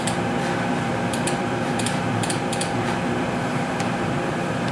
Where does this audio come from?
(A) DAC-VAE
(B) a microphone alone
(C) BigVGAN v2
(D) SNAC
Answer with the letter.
C